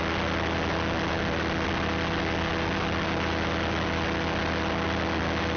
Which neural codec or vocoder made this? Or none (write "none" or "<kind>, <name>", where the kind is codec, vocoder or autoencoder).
none